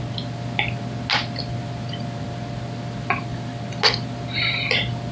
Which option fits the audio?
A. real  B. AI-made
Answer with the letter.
A